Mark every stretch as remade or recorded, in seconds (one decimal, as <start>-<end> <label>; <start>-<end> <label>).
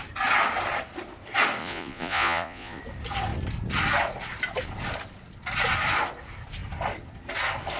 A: 0.0-1.6 recorded; 1.6-2.8 remade; 2.8-7.8 recorded